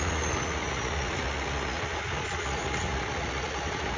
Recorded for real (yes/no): no